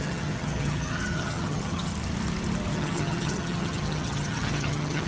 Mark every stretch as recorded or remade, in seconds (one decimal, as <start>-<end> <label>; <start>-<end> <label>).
0.0-1.9 remade; 1.9-2.7 recorded; 2.7-5.1 remade